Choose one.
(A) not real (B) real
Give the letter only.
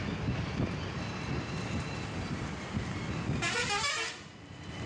B